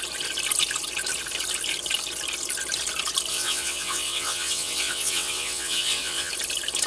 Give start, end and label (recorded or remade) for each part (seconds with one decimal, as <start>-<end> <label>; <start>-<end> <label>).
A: 0.0-3.3 recorded; 3.3-6.3 remade; 6.3-6.9 recorded